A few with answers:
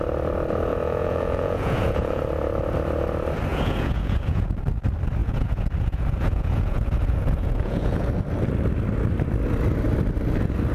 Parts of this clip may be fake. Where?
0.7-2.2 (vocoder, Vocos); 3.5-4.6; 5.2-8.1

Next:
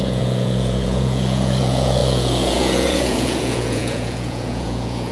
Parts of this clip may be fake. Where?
0.0-5.1 (vocoder, Vocos)

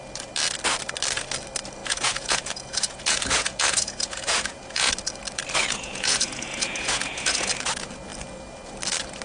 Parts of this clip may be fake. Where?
1.8-4.9 (vocoder, Vocos); 5.6-7.5

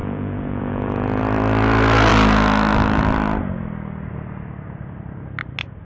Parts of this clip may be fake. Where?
0.0-1.2 (vocoder, Vocos)

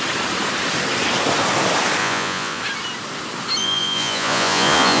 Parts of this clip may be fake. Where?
2.0-2.6 (vocoder, Vocos); 3.6-5.0

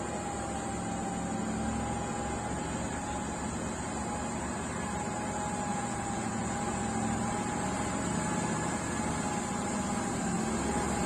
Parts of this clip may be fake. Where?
5.7-6.6 (vocoder, Vocos)